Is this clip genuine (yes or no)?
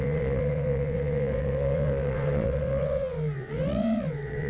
no